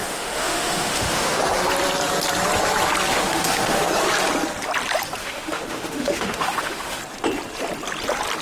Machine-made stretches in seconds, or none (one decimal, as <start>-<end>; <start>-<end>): 0.0-1.4; 3.1-3.8; 5.2-7.0